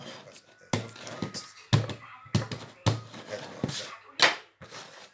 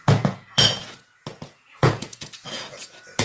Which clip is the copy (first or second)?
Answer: second